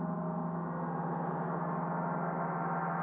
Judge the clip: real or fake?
real